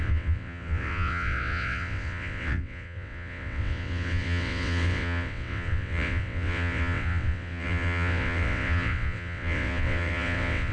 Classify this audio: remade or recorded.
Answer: remade